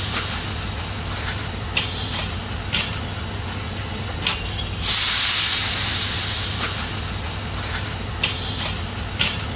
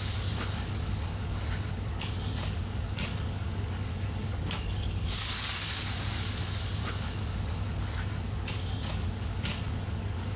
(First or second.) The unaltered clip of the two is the first